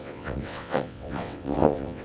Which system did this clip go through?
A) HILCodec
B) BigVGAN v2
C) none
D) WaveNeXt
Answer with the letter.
D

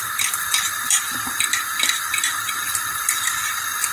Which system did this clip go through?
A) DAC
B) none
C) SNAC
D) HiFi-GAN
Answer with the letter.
B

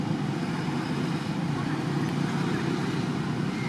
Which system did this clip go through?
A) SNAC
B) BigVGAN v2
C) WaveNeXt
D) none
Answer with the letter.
D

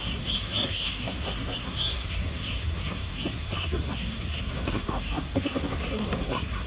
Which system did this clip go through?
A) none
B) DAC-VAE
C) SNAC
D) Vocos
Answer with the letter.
C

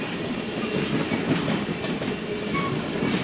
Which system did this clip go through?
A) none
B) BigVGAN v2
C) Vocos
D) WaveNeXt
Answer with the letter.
A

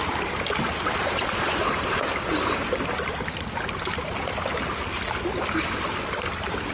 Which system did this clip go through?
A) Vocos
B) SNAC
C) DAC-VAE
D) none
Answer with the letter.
D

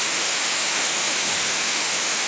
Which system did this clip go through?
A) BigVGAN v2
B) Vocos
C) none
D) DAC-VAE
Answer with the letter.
D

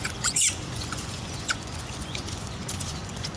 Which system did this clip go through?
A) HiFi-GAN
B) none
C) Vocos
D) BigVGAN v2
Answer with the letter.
C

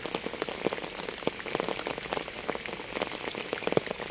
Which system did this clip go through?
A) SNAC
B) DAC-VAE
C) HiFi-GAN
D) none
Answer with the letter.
D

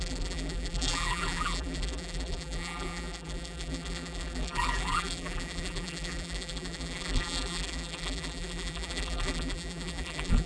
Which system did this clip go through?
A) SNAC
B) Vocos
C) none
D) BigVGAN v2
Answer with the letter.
D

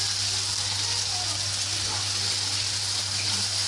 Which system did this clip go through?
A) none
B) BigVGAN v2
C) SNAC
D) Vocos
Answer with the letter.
A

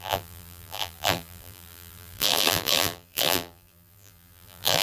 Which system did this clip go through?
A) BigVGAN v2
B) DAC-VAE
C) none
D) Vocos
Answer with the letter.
A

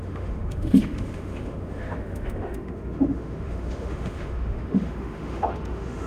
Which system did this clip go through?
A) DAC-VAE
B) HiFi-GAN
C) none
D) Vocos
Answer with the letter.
A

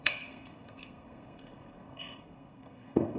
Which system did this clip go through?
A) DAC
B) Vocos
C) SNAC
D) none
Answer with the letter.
C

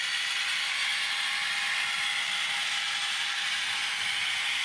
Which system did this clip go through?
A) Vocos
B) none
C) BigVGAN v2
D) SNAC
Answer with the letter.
B